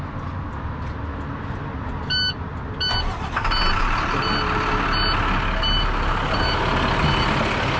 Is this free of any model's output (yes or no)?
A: yes